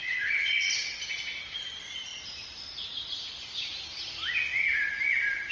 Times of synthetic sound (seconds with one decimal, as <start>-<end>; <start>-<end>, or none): 0.0-0.7